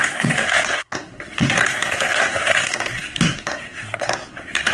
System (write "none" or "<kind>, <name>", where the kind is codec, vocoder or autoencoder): codec, SNAC